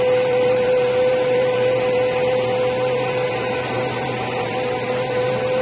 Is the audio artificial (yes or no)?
yes